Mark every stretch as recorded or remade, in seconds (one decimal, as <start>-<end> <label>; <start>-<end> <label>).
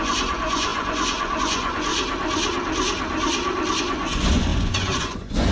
0.0-1.9 remade; 1.9-3.8 recorded; 3.8-5.5 remade